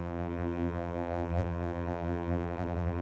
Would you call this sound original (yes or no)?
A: no